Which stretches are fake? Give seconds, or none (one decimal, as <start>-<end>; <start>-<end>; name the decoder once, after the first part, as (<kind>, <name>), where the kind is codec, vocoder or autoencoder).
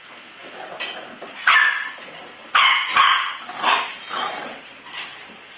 none